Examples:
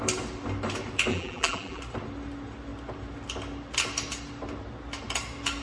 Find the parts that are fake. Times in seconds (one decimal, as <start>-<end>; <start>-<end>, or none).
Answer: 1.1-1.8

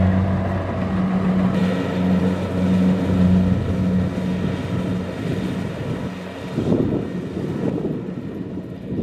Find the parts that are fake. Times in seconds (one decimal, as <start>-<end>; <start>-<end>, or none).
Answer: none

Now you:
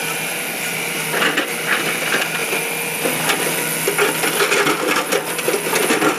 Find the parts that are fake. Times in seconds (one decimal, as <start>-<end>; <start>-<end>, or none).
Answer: none

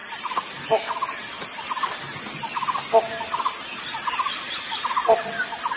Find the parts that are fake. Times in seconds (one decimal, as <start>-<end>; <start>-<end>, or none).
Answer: 5.0-5.8

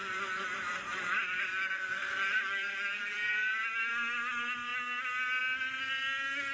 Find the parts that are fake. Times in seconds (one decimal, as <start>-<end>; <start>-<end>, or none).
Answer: 0.0-3.9

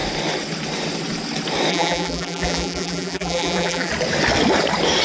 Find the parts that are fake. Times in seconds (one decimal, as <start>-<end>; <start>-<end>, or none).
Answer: 1.7-3.9

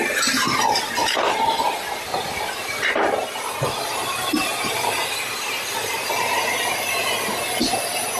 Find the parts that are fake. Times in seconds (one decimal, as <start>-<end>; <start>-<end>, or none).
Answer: 1.0-3.5; 4.4-7.5

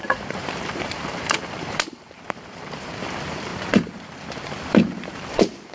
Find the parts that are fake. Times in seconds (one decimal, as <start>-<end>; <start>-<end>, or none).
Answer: 0.0-3.5; 5.1-5.7